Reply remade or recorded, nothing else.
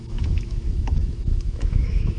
remade